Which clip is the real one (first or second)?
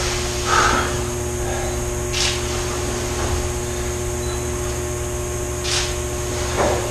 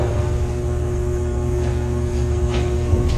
first